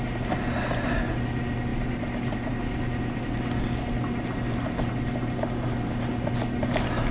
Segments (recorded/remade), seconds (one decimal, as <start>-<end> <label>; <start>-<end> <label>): 0.0-7.1 recorded